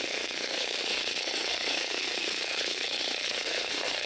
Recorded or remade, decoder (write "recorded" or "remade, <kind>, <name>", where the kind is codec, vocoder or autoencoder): remade, codec, SNAC